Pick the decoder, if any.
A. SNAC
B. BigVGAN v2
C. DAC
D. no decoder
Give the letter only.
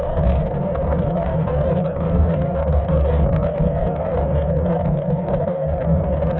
C